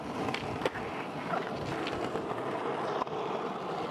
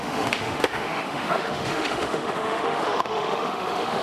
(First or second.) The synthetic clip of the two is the second